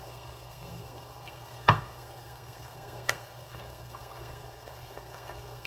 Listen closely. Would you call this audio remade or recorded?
remade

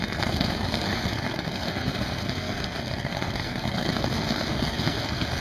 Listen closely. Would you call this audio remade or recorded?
remade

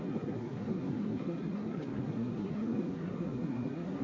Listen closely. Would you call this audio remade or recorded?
remade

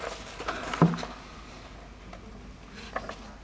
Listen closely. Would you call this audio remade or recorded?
recorded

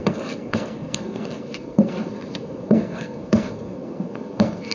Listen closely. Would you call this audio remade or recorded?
remade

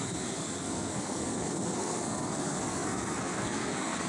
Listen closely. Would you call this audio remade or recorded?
remade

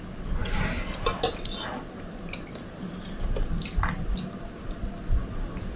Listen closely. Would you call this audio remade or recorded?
recorded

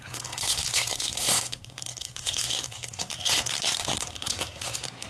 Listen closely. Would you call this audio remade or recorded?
remade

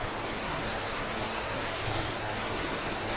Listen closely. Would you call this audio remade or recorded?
remade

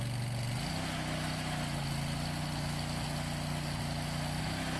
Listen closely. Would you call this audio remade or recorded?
recorded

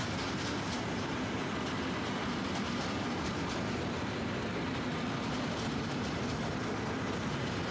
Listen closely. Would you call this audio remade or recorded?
recorded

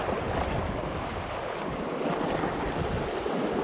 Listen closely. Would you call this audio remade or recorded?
recorded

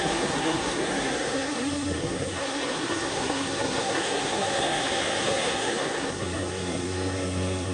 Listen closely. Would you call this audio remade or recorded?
remade